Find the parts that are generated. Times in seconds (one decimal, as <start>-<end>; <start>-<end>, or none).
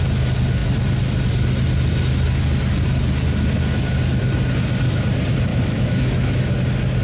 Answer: 5.5-6.4